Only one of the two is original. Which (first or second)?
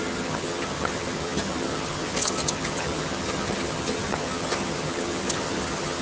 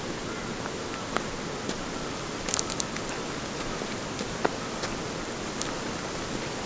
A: second